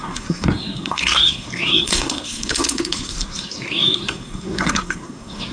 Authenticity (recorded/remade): remade